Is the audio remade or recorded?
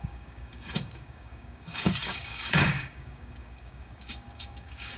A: remade